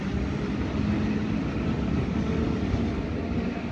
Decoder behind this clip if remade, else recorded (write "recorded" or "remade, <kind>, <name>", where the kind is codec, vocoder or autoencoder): recorded